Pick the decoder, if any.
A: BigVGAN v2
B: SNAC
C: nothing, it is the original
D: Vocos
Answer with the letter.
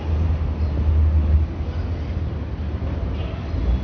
C